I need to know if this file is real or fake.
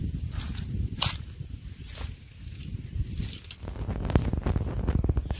real